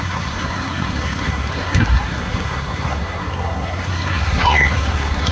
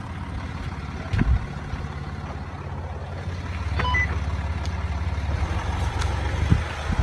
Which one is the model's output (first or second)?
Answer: first